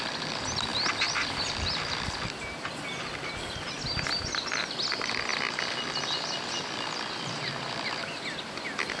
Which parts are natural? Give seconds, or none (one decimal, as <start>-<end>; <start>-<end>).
0.0-9.0